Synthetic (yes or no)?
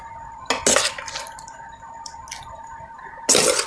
no